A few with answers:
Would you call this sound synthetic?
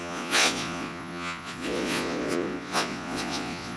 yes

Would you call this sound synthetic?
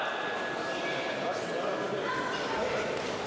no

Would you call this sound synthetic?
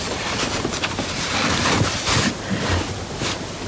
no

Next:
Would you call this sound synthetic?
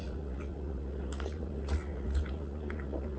yes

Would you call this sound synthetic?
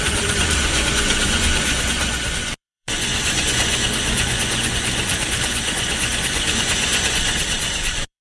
yes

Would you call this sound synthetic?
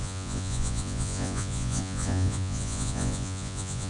yes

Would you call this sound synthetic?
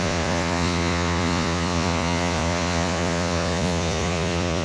yes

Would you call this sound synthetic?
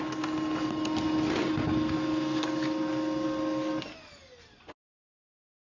no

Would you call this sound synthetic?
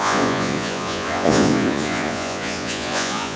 yes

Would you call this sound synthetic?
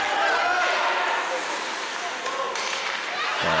no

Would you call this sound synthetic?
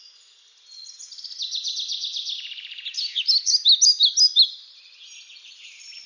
no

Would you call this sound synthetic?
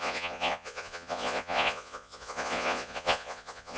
yes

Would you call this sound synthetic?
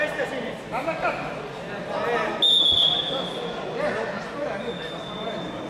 no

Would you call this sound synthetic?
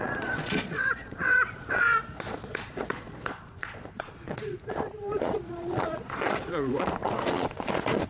yes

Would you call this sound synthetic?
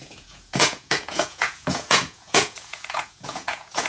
yes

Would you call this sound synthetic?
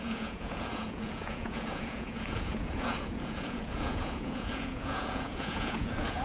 yes